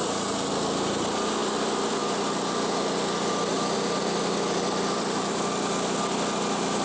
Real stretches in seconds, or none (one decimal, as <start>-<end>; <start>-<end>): 0.5-1.4; 2.0-3.5; 6.0-6.8